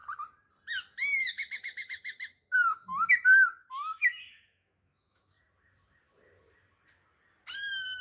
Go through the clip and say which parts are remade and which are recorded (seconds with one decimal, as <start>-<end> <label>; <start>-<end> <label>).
0.0-1.2 recorded; 1.2-3.1 remade; 3.1-3.6 recorded; 3.6-5.4 remade; 5.4-8.0 recorded